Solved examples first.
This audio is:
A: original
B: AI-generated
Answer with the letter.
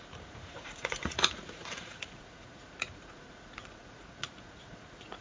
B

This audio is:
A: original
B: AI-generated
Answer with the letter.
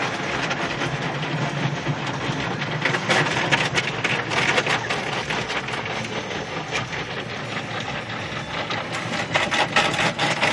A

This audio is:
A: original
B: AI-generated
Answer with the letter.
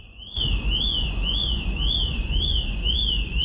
B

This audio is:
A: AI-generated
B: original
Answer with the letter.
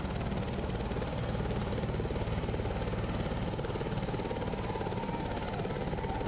B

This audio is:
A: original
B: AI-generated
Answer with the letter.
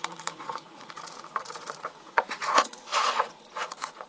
B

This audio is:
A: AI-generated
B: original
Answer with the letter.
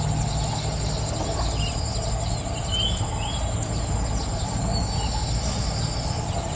B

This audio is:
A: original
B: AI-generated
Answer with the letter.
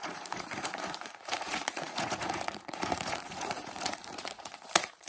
B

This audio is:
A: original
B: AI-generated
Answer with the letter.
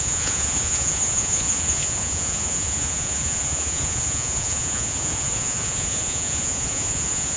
B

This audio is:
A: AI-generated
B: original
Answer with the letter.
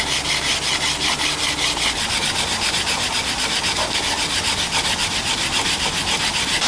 B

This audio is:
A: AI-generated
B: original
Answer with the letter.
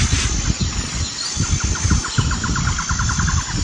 B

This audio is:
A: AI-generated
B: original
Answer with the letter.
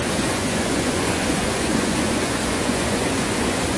A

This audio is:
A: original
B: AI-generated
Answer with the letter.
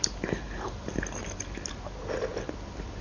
A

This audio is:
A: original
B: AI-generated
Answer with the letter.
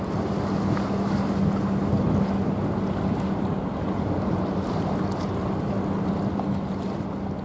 A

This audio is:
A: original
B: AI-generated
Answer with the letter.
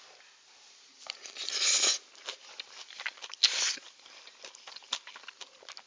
A